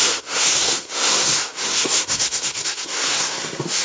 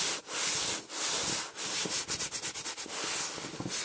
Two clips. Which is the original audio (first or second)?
second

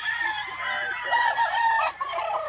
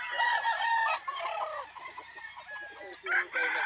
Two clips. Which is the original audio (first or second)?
second